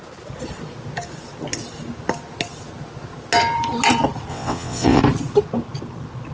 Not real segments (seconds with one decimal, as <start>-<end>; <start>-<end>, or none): 4.3-5.0